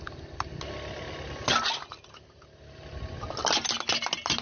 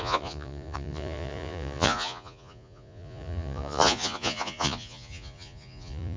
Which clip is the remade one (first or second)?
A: second